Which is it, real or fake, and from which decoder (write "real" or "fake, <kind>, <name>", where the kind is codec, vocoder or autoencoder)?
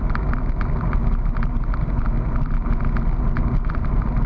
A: real